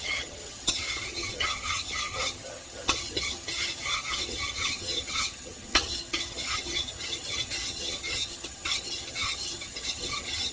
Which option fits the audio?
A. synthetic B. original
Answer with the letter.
A